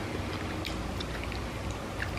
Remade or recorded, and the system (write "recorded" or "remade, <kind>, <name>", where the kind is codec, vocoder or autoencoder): recorded